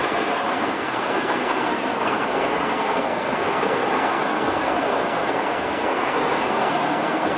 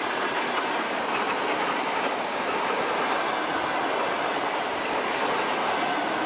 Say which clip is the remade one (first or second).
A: first